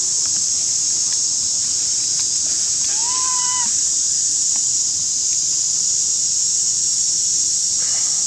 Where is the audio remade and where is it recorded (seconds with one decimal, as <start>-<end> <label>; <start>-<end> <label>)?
0.0-6.4 recorded; 6.4-6.9 remade; 6.9-8.3 recorded